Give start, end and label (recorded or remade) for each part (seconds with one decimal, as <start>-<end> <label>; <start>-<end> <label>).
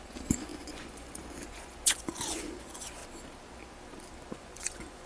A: 0.0-3.0 remade; 3.0-4.3 recorded; 4.3-5.1 remade